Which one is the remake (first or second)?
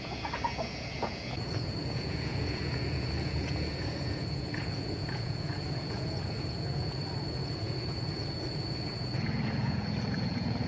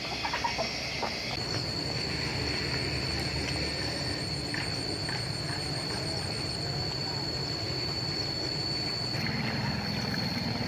first